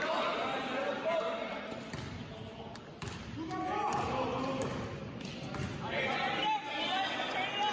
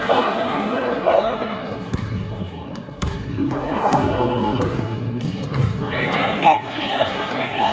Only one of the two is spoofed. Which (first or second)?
second